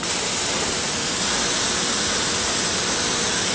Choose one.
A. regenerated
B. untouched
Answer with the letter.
B